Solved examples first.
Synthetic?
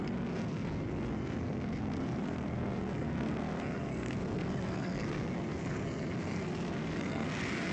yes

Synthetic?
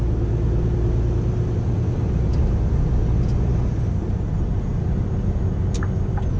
no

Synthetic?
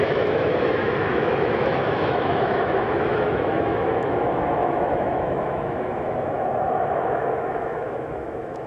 yes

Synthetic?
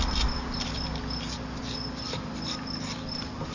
no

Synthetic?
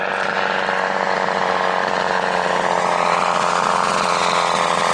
no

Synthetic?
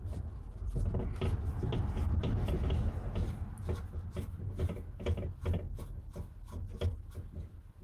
no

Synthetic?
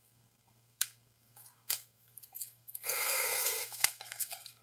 yes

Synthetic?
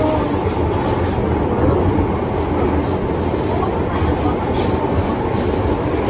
no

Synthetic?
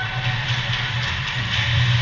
no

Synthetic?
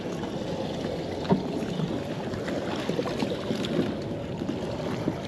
no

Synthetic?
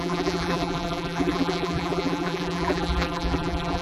yes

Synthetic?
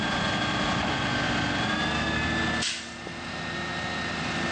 no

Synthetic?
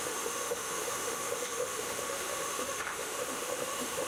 yes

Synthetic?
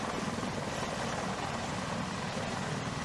no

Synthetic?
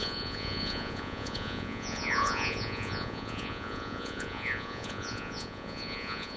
yes